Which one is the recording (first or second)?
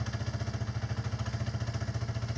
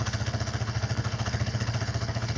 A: first